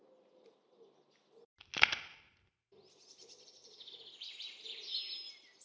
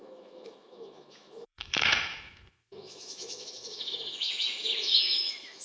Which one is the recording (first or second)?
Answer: first